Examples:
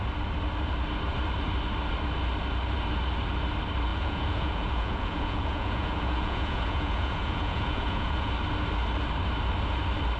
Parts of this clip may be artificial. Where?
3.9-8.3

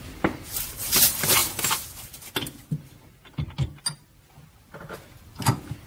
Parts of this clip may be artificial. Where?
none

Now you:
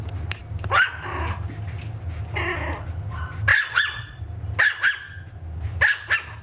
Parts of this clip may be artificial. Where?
3.5-4.2

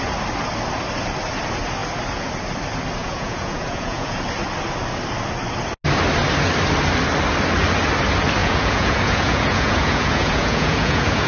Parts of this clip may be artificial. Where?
3.0-4.2; 8.4-11.3